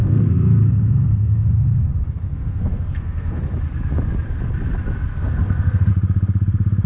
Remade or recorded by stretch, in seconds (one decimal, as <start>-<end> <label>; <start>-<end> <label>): 0.0-1.5 remade; 1.5-2.3 recorded; 2.3-3.4 remade; 3.4-5.1 recorded; 5.1-5.9 remade; 5.9-6.9 recorded